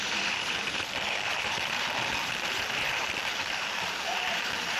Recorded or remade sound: remade